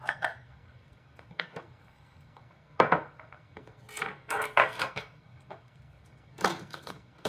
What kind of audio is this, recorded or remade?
remade